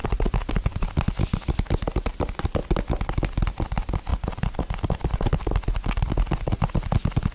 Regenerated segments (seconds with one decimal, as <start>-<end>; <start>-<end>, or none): none